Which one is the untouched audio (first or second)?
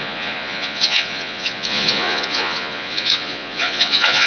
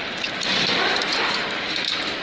second